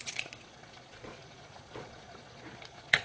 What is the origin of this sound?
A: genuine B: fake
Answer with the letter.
B